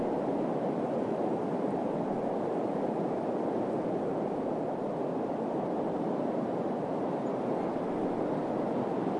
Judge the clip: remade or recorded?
recorded